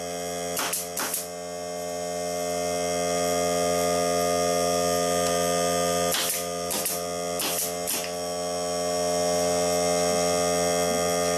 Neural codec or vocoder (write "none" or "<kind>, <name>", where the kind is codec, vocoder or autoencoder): none